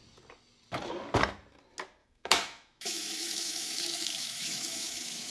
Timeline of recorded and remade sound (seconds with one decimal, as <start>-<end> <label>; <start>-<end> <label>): 0.0-2.0 recorded; 2.0-5.3 remade